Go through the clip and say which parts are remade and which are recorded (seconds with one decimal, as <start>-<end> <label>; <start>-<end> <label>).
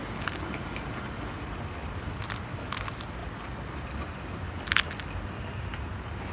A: 0.0-6.3 recorded